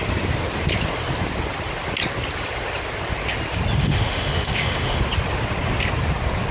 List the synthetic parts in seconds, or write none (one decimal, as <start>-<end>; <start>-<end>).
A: 3.8-5.0